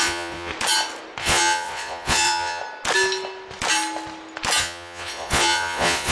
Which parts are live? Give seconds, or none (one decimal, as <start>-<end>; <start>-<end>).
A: 0.5-1.2; 2.6-4.6